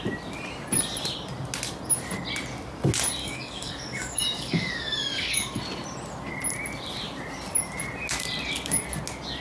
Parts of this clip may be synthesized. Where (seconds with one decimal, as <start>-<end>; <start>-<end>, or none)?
3.2-5.6